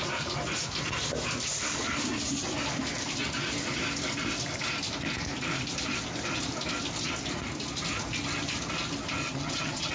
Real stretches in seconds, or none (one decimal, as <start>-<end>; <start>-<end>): 0.0-9.2